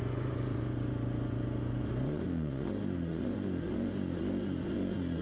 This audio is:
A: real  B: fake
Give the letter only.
B